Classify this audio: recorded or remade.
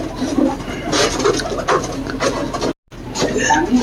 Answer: recorded